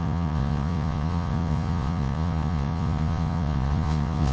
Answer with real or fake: fake